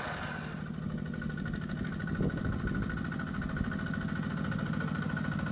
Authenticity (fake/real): real